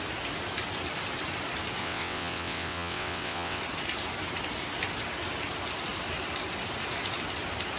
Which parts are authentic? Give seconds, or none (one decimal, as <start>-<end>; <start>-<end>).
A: 0.0-1.8; 3.6-7.8